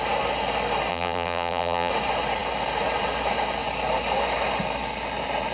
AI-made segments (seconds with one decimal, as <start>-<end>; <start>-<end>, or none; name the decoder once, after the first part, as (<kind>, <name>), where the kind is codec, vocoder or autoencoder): 0.9-1.9 (vocoder, BigVGAN v2)